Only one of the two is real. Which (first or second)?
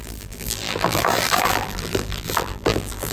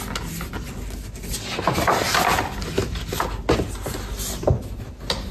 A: second